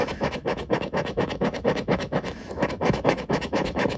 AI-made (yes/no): yes